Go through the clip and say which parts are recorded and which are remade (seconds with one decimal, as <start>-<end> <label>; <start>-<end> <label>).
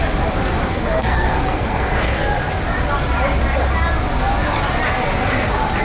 0.0-0.7 recorded; 0.7-2.2 remade; 2.2-5.8 recorded